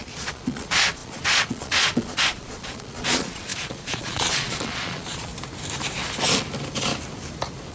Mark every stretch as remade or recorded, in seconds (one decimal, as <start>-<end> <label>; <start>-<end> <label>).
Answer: 0.0-5.3 remade; 5.3-7.7 recorded